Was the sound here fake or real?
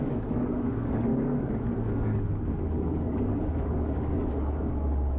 fake